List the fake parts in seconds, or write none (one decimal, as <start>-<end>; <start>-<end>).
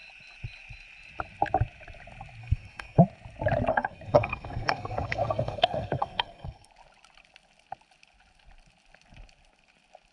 2.4-3.0; 3.7-6.7